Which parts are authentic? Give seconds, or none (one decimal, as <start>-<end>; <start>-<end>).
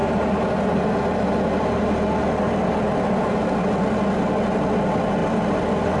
0.0-6.0